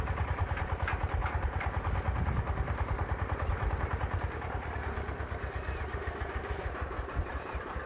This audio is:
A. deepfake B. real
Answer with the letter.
A